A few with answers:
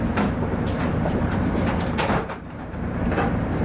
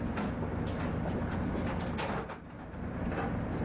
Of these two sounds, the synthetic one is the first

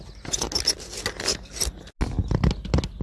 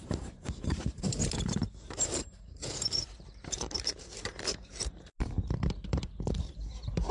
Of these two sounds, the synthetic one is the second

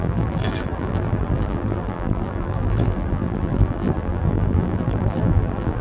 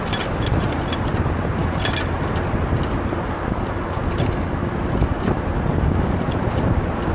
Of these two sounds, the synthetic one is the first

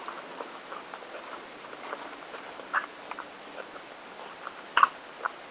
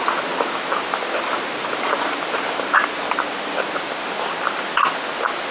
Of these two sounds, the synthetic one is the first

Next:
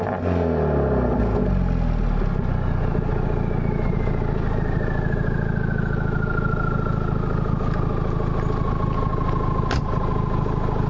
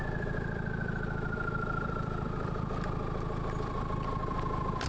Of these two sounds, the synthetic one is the second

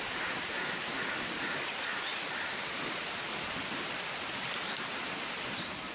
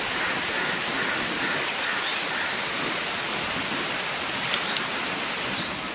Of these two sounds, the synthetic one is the first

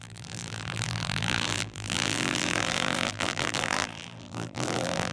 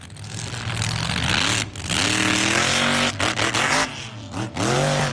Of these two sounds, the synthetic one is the first